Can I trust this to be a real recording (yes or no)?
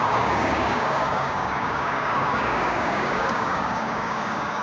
no